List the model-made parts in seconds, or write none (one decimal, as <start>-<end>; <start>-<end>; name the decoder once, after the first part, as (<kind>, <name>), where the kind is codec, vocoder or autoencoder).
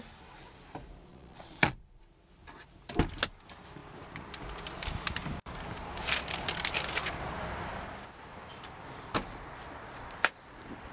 1.1-2.0 (vocoder, Vocos)